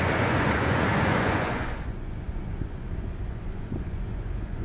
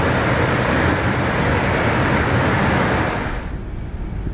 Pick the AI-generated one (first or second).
first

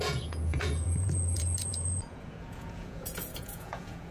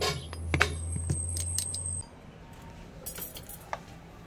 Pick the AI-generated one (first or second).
first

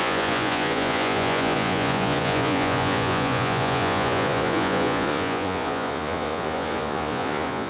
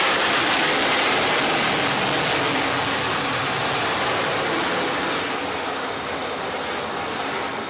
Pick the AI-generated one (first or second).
first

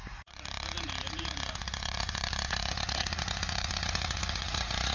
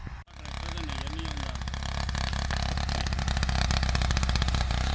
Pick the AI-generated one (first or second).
first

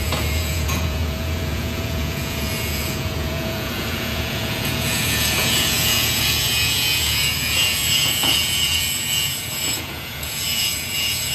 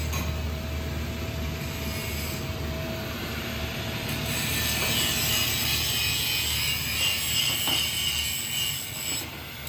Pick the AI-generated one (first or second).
first